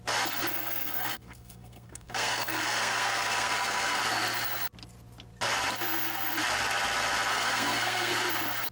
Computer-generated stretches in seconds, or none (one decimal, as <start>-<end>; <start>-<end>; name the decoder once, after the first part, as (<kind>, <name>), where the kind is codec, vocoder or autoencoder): 0.5-4.0 (codec, SNAC); 7.3-8.1